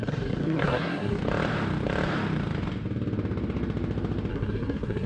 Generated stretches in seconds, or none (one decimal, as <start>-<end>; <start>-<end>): 0.0-1.2; 4.3-5.1